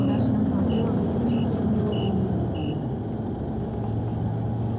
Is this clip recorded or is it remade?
recorded